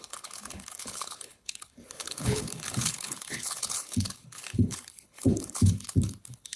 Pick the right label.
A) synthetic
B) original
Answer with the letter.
A